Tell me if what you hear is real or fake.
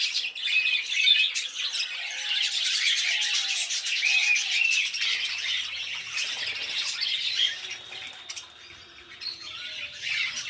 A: real